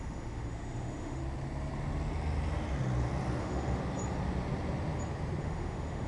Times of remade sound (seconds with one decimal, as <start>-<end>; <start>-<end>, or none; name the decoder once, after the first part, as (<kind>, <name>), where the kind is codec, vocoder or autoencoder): 0.0-1.2 (autoencoder, DAC-VAE); 3.4-3.8; 5.4-6.1